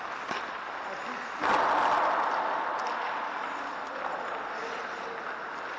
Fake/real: real